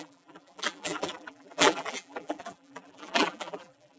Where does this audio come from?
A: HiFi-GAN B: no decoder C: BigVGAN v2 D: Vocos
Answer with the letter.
C